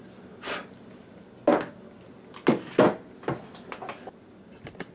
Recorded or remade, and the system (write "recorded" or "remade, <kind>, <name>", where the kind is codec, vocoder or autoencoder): recorded